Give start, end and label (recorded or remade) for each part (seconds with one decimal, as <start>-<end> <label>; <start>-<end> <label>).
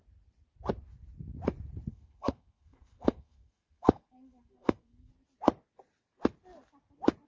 0.0-1.9 recorded; 1.9-5.1 remade; 5.1-7.3 recorded